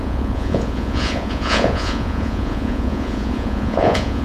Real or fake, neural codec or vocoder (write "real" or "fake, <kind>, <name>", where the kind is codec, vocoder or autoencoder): fake, vocoder, Vocos